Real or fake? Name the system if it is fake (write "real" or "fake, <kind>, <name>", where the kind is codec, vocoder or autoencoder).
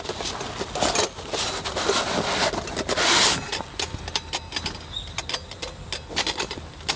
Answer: real